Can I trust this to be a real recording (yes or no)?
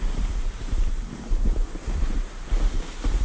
no